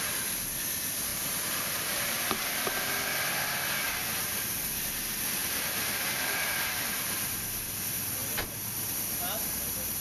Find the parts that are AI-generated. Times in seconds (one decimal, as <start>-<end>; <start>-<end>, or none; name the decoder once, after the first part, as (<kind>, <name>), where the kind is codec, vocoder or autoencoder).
1.1-2.5 (vocoder, BigVGAN v2); 5.4-7.0